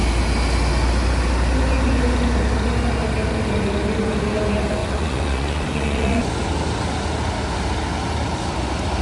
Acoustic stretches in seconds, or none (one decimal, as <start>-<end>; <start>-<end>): 0.0-4.8; 6.3-9.0